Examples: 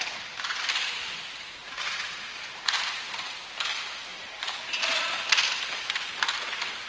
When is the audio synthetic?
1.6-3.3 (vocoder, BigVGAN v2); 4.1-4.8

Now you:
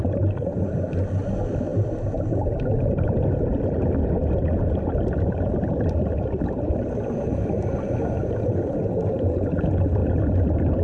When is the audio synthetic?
1.7-2.6 (vocoder, BigVGAN v2); 4.2-6.9; 10.0-10.8

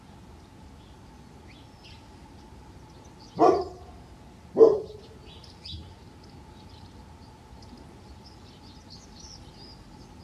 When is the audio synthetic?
5.4-6.1 (vocoder, BigVGAN v2)

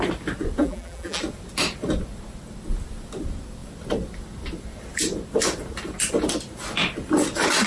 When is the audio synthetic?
0.6-1.2 (vocoder, BigVGAN v2)

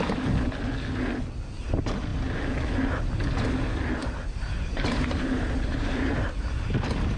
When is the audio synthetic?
4.0-6.1 (vocoder, BigVGAN v2)